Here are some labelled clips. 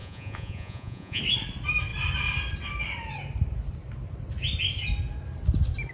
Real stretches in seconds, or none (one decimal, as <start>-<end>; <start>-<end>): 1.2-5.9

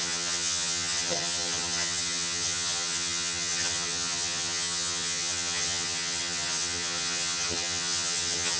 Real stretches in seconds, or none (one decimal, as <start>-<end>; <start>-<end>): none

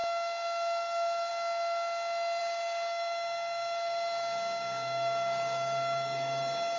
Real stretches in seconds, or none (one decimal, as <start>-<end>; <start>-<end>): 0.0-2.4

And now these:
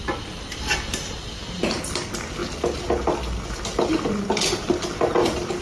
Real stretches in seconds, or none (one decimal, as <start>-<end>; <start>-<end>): 0.0-5.6